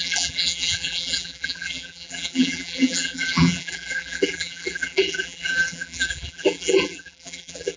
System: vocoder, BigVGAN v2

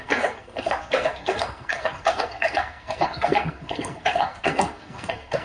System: codec, SNAC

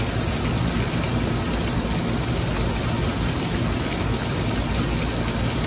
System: none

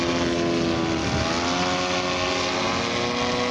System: none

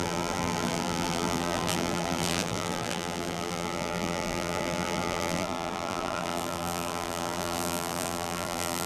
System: vocoder, BigVGAN v2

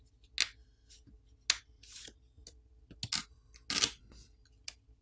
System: none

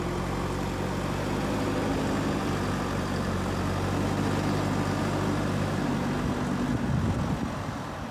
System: none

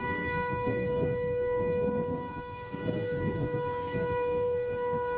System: codec, SNAC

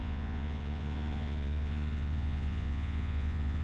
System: vocoder, Vocos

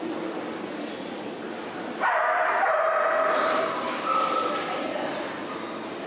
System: none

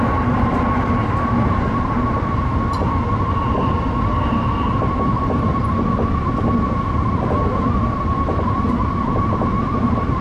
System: none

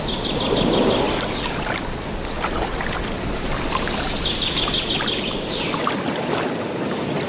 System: none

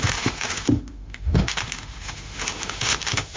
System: autoencoder, DAC-VAE